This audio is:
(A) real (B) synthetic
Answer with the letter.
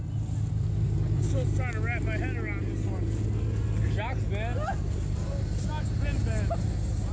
A